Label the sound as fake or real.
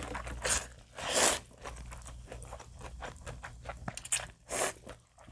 real